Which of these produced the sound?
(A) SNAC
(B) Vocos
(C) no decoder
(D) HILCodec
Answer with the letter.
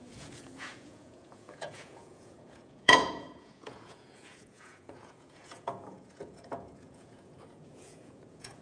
B